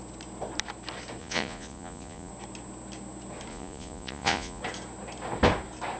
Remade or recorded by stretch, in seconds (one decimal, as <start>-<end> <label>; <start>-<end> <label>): 0.0-1.2 recorded; 1.2-2.3 remade; 2.3-3.5 recorded; 3.5-4.6 remade; 4.6-6.0 recorded